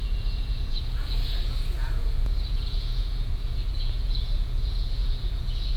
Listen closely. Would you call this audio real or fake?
fake